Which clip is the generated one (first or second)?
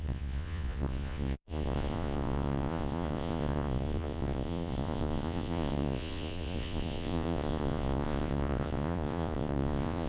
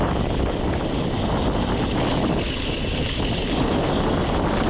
first